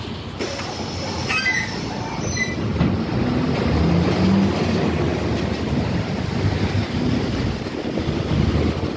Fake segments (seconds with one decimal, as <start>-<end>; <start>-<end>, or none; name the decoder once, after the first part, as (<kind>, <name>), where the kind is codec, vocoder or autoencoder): none